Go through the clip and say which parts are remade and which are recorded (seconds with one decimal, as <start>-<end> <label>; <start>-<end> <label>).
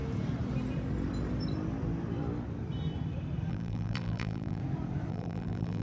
0.0-3.5 recorded; 3.5-4.6 remade; 4.6-5.1 recorded; 5.1-5.8 remade